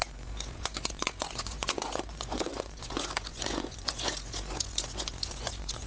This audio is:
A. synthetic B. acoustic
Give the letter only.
A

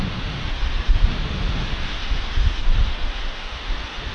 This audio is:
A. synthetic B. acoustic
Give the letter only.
A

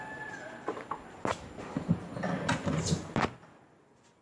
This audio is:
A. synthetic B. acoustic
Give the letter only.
B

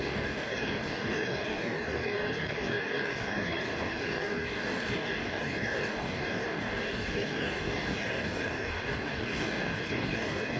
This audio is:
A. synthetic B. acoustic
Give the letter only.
A